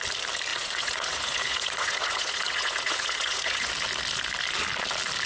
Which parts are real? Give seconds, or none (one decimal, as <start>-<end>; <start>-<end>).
0.0-0.5; 3.7-5.3